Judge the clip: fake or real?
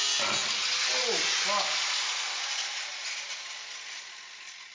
real